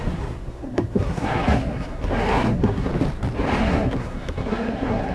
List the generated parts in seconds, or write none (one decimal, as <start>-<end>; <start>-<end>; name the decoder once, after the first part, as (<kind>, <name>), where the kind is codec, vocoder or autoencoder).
0.0-2.9 (codec, SNAC); 3.6-5.1